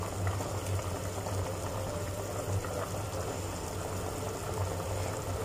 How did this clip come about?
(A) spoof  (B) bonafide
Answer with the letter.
B